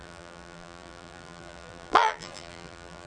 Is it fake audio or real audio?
fake